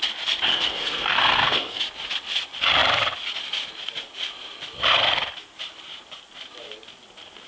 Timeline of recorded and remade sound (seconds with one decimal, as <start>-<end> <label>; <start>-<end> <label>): 0.0-0.5 recorded; 0.5-1.8 remade; 1.8-7.5 recorded